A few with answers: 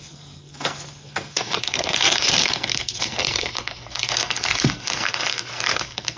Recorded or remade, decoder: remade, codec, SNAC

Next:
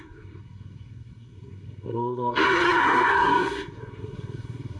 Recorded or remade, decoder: remade, codec, SNAC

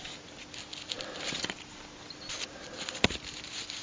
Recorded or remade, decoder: recorded